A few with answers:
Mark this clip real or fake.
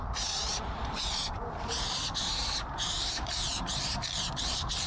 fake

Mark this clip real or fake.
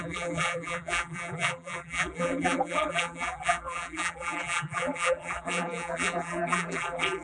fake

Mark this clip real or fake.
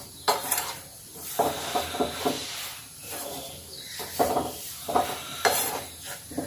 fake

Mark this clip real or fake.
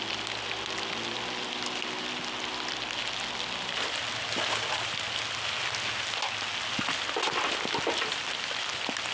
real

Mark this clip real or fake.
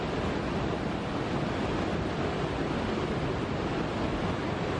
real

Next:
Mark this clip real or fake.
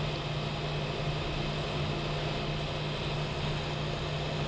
real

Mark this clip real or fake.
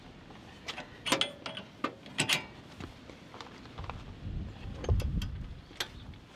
real